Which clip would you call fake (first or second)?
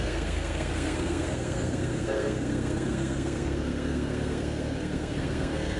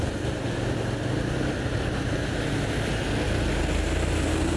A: first